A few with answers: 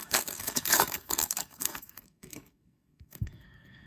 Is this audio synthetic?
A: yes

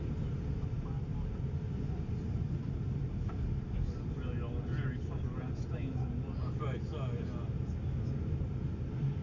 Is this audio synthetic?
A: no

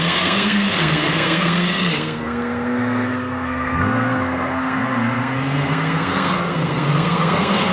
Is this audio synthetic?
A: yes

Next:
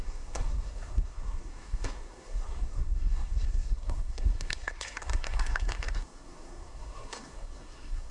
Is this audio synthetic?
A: yes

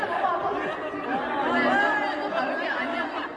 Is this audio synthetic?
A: no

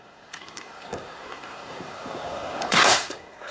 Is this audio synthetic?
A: yes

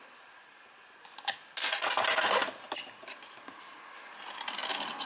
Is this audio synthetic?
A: no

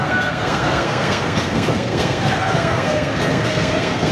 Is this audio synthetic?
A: yes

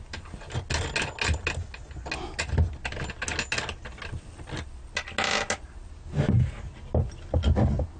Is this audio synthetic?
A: no